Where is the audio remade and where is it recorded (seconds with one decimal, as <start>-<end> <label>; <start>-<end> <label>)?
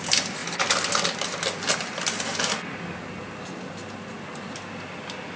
0.0-5.4 recorded